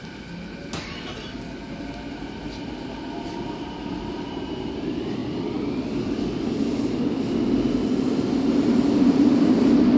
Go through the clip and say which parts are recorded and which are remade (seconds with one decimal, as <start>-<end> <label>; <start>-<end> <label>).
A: 0.0-10.0 recorded